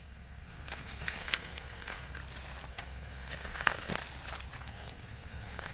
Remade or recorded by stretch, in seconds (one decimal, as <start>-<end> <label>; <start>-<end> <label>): 0.0-2.2 remade; 2.2-2.7 recorded; 2.7-3.9 remade; 3.9-4.6 recorded; 4.6-5.7 remade